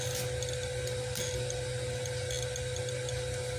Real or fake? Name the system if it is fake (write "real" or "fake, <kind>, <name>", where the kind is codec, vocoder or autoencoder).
real